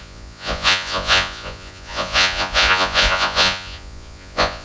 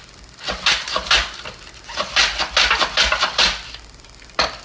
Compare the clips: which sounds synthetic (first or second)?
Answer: first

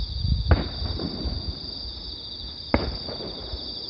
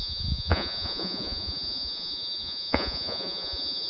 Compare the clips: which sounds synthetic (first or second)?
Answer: second